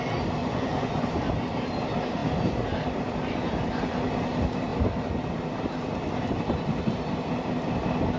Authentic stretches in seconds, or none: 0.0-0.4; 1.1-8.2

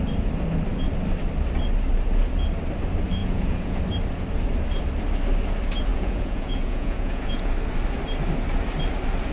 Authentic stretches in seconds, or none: 0.0-3.2; 3.8-5.9; 7.5-9.3

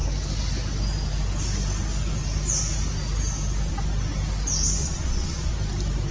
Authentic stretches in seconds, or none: 0.0-4.8; 5.5-6.1

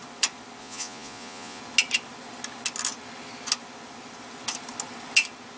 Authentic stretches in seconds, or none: 0.0-0.6; 1.6-5.6

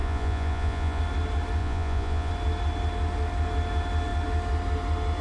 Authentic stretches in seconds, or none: 1.0-1.6; 2.3-5.2

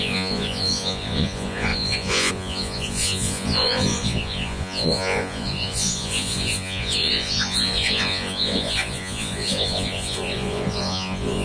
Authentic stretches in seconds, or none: none